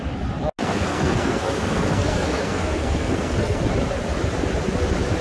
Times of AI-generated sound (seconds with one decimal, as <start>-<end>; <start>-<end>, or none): 0.6-3.7